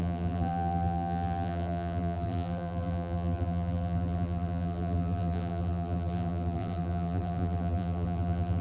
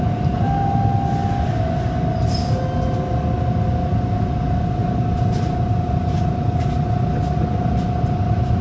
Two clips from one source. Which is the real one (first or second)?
second